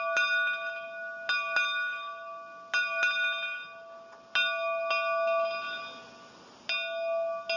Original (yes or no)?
yes